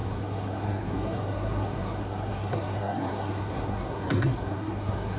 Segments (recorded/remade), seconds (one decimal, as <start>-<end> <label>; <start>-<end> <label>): 0.0-5.2 remade